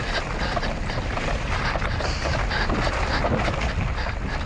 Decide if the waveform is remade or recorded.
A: recorded